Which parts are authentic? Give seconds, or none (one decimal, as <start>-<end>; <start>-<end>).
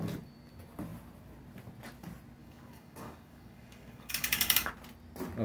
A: 0.0-2.4; 4.7-5.4